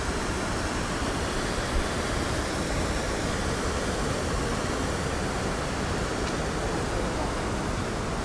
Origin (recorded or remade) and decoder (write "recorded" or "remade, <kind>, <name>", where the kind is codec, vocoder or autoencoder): recorded